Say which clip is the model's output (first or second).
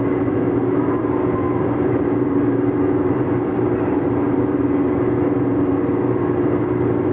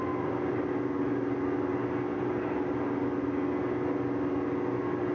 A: first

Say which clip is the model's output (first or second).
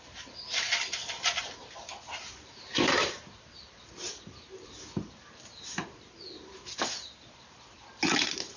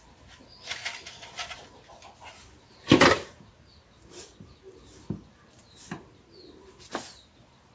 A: first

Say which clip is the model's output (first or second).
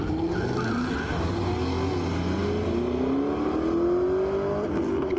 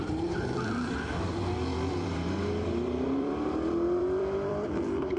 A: second